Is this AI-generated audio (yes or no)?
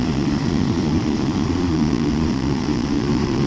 yes